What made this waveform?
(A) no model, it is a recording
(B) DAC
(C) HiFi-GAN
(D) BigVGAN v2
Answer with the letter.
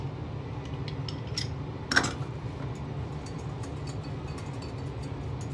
A